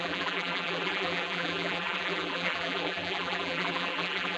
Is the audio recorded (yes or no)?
no